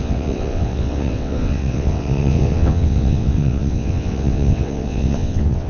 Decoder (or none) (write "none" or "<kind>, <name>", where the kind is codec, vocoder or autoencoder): vocoder, WaveNeXt